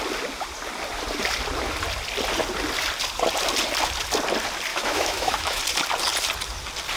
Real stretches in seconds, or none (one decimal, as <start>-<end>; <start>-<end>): 0.0-4.7; 5.6-7.0